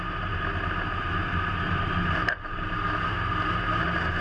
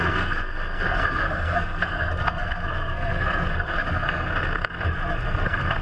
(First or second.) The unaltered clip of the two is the first